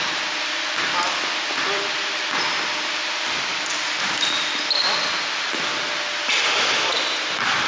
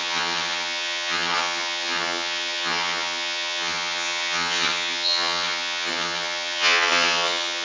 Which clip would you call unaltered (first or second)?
first